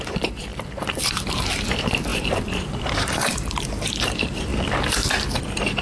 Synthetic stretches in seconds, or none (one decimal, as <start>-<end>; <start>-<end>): 0.0-4.5; 5.1-5.8